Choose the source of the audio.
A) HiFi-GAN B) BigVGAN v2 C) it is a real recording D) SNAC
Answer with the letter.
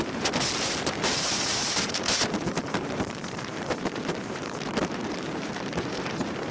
B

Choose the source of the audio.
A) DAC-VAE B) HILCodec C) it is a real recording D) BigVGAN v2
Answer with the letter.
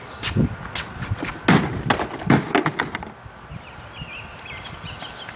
C